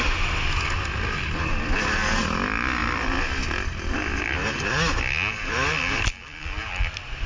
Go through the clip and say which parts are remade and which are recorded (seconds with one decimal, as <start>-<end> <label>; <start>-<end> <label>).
0.0-7.3 recorded

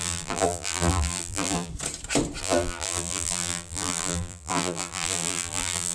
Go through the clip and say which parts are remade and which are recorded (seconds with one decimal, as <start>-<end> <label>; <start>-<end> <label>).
0.0-1.7 remade; 1.7-2.4 recorded; 2.4-5.9 remade

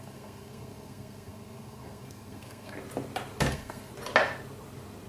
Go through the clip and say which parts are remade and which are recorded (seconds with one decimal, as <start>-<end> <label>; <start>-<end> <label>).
0.0-2.8 remade; 2.8-3.5 recorded; 3.5-3.9 remade; 3.9-5.1 recorded

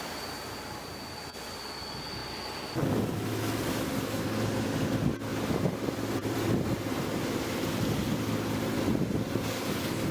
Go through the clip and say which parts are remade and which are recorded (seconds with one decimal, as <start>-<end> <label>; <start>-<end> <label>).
0.0-2.2 recorded; 2.2-2.7 remade; 2.7-5.3 recorded; 5.3-8.8 remade; 8.8-10.1 recorded

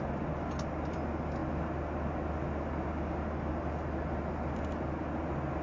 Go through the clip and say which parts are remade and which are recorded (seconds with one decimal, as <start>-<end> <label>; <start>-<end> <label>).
0.0-5.6 recorded

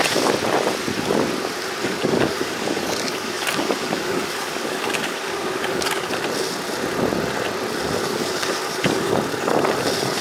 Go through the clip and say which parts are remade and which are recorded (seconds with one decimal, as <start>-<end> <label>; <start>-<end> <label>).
0.0-1.8 recorded; 1.8-6.1 remade; 6.1-8.0 recorded; 8.0-9.2 remade; 9.2-10.2 recorded